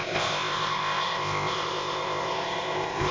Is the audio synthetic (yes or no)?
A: yes